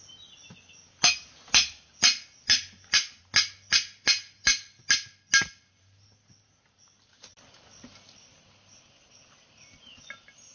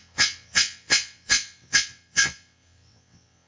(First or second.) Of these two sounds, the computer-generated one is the second